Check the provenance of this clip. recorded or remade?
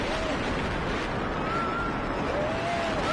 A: recorded